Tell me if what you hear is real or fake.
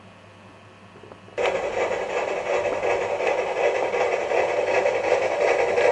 real